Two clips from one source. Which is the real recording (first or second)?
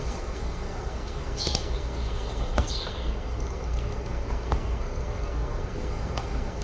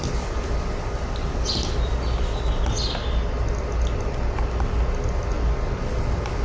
second